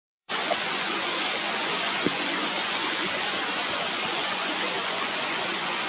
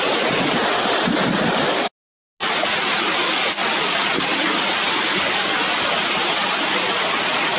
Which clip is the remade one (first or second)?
first